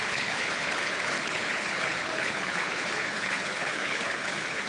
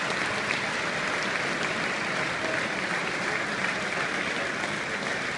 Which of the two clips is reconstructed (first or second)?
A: first